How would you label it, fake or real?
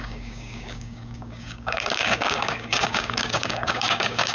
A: fake